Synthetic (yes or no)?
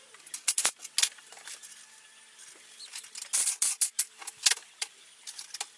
no